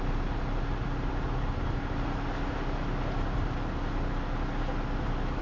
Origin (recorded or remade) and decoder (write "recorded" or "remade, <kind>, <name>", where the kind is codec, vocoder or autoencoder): recorded